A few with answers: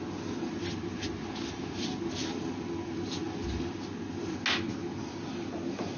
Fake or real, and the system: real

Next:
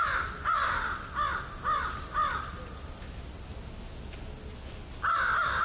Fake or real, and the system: real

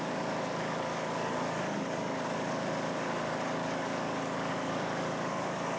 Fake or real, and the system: fake, codec, DAC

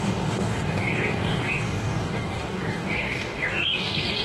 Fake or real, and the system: fake, codec, DAC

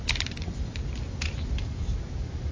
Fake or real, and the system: real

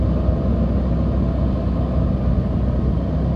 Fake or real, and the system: real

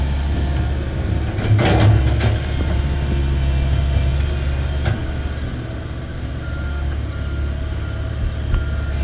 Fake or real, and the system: real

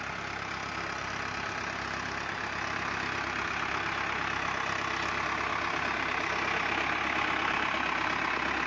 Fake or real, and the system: real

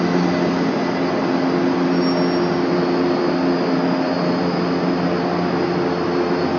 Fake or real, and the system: real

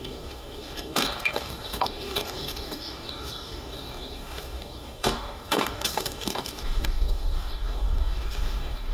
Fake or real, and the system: fake, codec, DAC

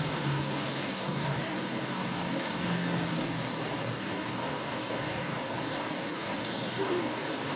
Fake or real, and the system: fake, codec, DAC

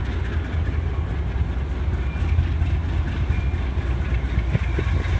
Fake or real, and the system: real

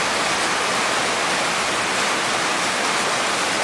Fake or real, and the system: real